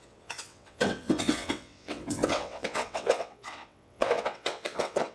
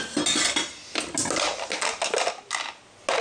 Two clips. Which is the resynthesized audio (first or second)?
first